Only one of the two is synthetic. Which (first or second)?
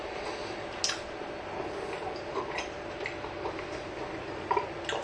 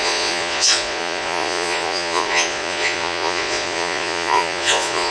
second